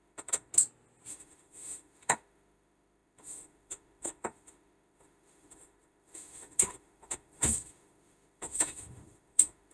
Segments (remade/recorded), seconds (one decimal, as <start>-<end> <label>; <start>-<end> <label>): 0.0-0.5 remade; 0.5-1.1 recorded; 1.1-9.7 remade